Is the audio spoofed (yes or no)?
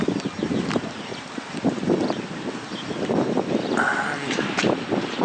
no